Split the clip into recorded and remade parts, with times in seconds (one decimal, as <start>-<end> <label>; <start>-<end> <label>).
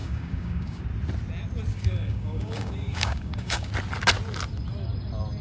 0.0-0.8 remade; 0.8-1.7 recorded; 1.7-3.7 remade; 3.7-5.4 recorded